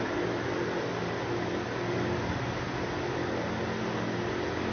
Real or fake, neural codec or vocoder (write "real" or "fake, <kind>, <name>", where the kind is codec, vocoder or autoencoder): real